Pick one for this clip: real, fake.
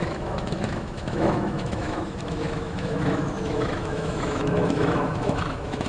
fake